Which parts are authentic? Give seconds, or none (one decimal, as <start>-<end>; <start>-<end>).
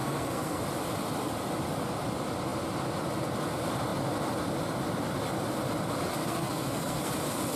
0.6-6.2; 7.1-7.6